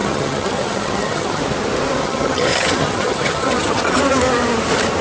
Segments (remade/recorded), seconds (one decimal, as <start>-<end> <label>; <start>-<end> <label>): 0.0-1.4 remade; 1.4-2.0 recorded; 2.0-3.8 remade; 3.8-5.0 recorded